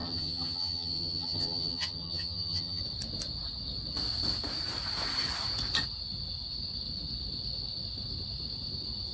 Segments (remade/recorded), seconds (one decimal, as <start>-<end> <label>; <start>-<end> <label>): 0.0-2.8 remade; 2.8-9.1 recorded